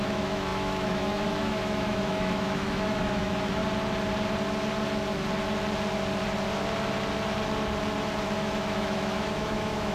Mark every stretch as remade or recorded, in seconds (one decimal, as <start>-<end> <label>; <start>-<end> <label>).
0.0-3.6 remade; 3.6-8.4 recorded; 8.4-9.9 remade

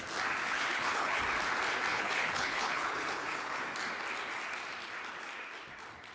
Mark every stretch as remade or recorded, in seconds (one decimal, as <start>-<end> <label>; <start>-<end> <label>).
0.0-0.4 recorded; 0.4-1.2 remade; 1.2-1.9 recorded; 1.9-3.6 remade; 3.6-6.1 recorded

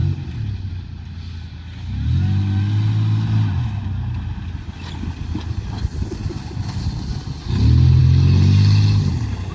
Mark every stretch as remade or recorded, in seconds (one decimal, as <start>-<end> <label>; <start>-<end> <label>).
0.0-9.5 recorded

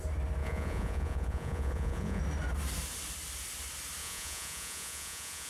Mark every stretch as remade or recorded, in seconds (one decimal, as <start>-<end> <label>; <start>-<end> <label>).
0.0-0.4 recorded; 0.4-2.2 remade; 2.2-4.0 recorded; 4.0-5.5 remade

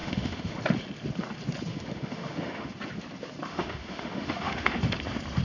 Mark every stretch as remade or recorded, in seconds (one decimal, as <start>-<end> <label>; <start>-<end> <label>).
0.0-0.6 remade; 0.6-1.7 recorded; 1.7-2.7 remade; 2.7-3.5 recorded; 3.5-4.8 remade; 4.8-5.4 recorded